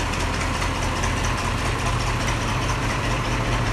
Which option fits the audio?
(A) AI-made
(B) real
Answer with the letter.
A